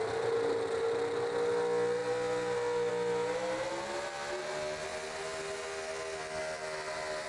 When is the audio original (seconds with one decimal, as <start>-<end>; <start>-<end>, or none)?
0.0-2.0; 2.9-7.3